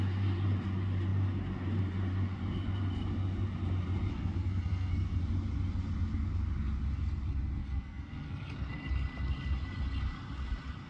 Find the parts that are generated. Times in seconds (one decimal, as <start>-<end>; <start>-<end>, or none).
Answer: 4.1-5.2; 7.6-8.7

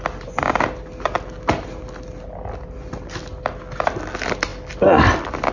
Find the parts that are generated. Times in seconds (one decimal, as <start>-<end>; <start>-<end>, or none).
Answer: none